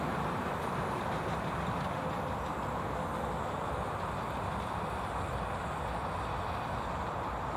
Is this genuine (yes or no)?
yes